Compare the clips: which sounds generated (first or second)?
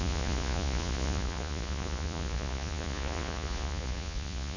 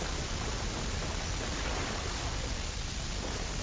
first